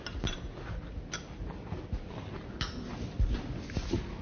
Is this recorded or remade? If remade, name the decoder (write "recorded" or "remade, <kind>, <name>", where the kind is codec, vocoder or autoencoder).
recorded